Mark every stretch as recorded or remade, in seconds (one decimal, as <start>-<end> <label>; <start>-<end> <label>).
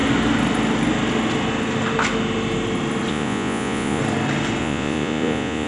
0.0-3.1 recorded; 3.1-4.0 remade; 4.0-4.6 recorded; 4.6-5.7 remade